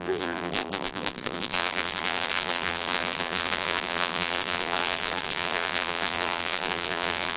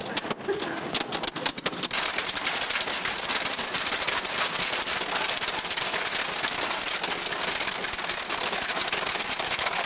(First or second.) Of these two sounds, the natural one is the second